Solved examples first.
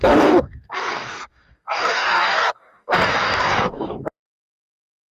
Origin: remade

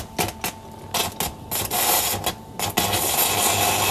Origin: recorded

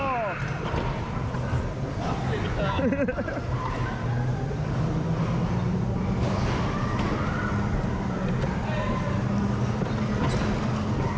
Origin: recorded